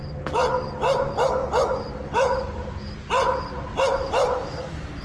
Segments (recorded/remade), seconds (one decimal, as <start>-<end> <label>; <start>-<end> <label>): 0.0-1.4 remade; 1.4-3.8 recorded; 3.8-5.0 remade